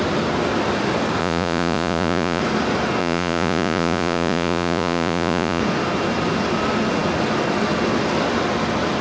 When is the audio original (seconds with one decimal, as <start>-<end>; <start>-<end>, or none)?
0.0-1.2; 2.4-3.0; 5.6-9.0